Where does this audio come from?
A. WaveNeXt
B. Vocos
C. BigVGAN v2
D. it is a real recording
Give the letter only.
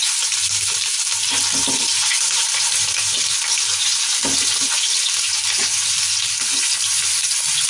C